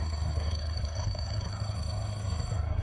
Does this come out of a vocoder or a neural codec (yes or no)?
yes